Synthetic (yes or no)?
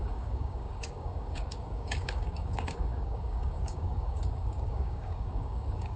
yes